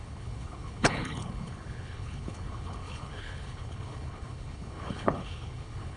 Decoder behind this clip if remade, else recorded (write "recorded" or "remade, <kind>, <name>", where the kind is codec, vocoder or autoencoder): remade, codec, HILCodec